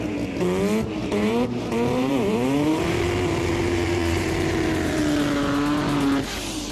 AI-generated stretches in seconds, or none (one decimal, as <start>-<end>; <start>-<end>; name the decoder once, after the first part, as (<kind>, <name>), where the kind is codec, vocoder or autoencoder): 1.0-5.0 (vocoder, BigVGAN v2)